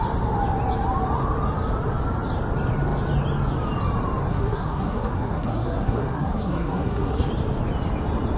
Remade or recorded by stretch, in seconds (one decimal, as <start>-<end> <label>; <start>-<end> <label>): 0.0-4.3 recorded; 4.3-7.3 remade; 7.3-8.4 recorded